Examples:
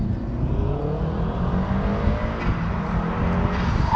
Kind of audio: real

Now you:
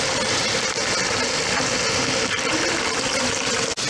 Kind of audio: real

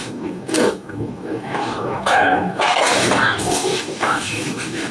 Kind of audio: fake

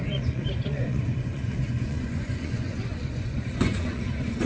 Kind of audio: fake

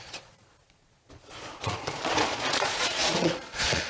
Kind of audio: fake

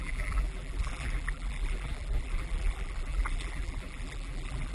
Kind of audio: fake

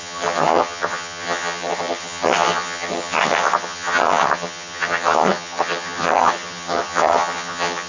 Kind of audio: fake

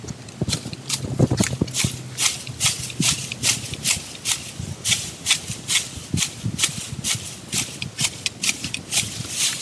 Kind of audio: real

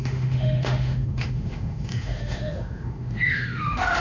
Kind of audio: fake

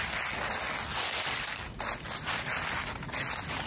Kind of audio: real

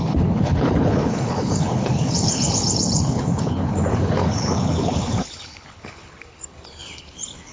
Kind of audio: fake